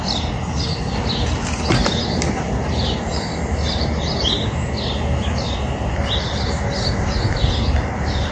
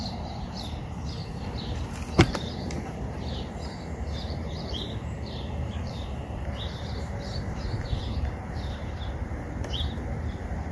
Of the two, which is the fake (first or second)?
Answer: second